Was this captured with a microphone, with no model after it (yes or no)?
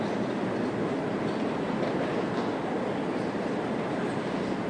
yes